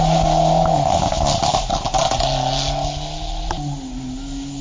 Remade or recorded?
recorded